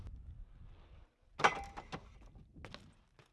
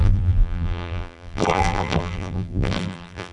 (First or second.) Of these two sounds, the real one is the first